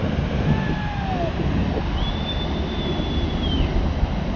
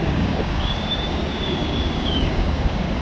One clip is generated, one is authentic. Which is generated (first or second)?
second